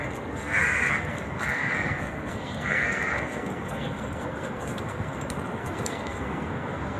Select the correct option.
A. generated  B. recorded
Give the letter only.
A